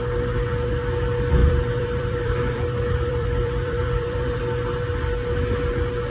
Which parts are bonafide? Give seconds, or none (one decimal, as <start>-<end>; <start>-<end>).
0.0-1.4; 4.4-6.1